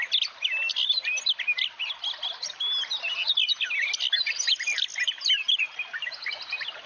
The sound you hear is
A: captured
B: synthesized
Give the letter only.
A